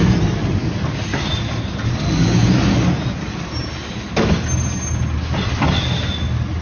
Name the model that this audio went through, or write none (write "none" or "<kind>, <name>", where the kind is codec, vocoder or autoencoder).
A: none